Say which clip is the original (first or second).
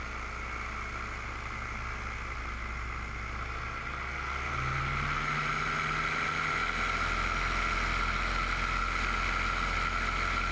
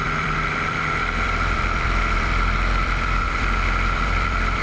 first